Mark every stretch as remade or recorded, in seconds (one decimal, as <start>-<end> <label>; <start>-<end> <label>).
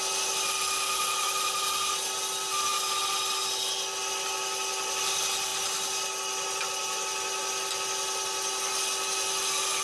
0.0-9.8 recorded